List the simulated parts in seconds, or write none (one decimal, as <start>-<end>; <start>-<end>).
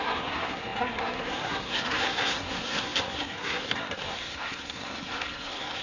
0.0-5.8